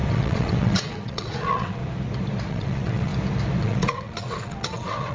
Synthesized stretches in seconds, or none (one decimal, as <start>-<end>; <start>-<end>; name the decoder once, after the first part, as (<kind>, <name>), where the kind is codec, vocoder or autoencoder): 0.0-1.8 (vocoder, WaveNeXt); 2.5-3.1; 3.6-5.1